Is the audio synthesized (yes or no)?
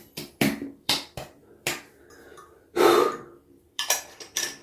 yes